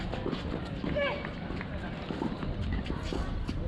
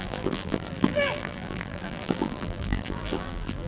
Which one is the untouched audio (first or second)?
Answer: first